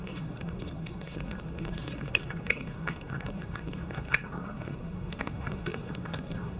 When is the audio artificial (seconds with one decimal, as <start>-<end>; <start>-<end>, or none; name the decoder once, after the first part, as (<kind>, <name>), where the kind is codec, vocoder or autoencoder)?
0.0-6.6 (codec, SNAC)